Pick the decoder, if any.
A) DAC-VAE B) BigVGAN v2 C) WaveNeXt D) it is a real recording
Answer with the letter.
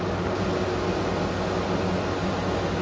D